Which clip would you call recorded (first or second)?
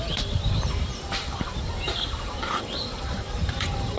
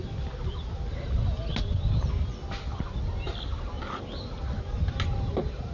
second